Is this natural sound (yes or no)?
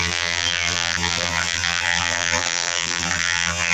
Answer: no